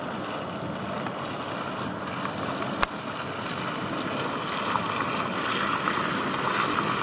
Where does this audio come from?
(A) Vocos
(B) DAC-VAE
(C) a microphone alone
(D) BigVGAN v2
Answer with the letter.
C